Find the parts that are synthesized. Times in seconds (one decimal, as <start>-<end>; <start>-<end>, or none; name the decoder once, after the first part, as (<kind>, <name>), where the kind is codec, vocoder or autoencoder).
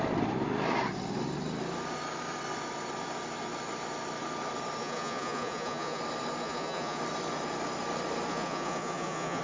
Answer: 4.8-6.0 (vocoder, Vocos); 6.4-7.0; 8.3-9.4